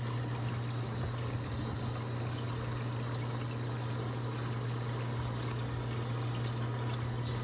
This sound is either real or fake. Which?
real